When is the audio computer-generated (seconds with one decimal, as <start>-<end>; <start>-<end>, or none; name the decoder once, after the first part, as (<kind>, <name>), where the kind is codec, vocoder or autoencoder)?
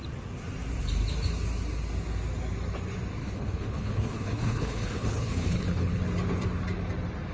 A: 3.2-6.0 (codec, HILCodec)